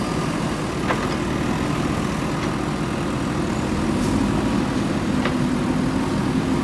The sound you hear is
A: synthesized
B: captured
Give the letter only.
B